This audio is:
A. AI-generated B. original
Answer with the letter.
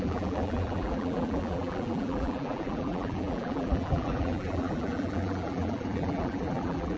A